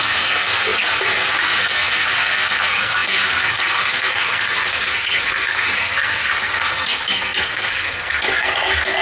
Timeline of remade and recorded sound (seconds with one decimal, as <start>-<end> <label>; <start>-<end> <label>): 0.0-9.0 remade